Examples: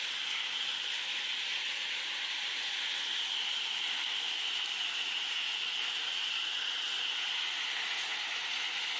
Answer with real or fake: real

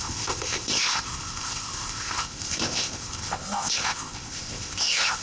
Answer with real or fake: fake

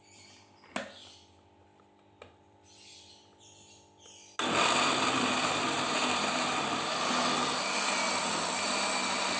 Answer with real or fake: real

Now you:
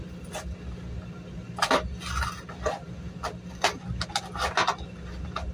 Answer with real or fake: real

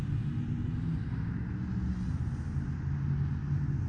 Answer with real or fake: real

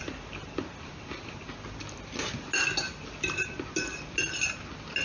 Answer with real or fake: real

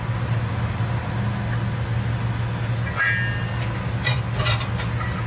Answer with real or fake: real